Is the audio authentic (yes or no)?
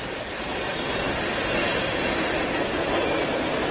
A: yes